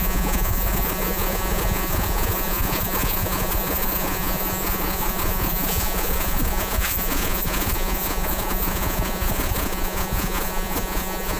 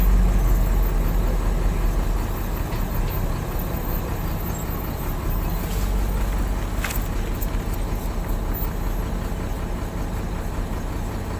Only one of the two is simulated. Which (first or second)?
first